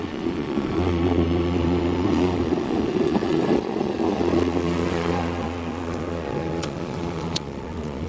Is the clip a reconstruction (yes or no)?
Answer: yes